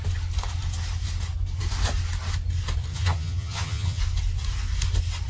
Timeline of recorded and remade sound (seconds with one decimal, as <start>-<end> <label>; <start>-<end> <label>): 0.0-2.9 recorded; 2.9-4.0 remade; 4.0-5.3 recorded